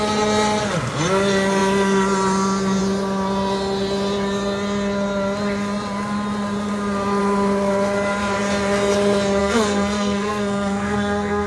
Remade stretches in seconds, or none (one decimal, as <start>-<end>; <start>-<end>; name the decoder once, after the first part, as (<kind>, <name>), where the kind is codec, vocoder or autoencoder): 9.4-11.5 (codec, SNAC)

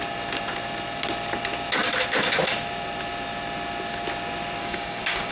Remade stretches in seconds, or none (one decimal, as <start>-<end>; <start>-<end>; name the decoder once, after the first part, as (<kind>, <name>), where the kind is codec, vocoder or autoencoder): 4.6-5.3 (codec, DAC)

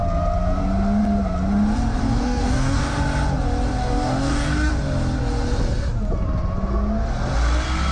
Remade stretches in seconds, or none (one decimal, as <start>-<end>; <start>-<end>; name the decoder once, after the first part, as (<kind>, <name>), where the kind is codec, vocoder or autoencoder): 2.0-3.0 (codec, DAC); 3.8-4.7

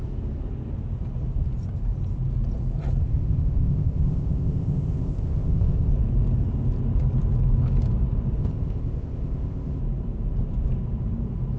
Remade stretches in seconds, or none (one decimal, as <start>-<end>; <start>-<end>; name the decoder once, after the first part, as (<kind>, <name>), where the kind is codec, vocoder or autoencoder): 3.0-5.9 (codec, ZipCodec); 8.4-9.8

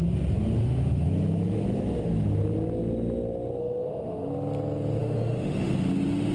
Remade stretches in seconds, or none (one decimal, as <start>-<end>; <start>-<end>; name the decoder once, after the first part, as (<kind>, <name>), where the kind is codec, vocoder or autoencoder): 0.6-1.1 (autoencoder, DAC-VAE); 3.6-4.3; 5.0-5.7

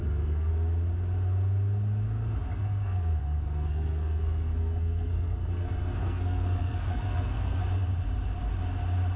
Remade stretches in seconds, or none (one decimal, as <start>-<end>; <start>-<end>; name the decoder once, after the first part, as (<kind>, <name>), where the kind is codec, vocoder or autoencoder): 0.0-0.5 (codec, SNAC); 2.5-7.6

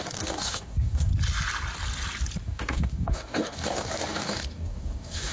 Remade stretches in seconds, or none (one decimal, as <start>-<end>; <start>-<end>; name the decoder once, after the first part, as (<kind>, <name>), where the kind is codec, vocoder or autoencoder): 0.0-1.1 (codec, DAC); 2.4-5.3